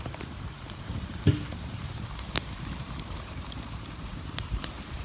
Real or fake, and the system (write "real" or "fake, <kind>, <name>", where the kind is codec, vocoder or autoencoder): fake, vocoder, BigVGAN v2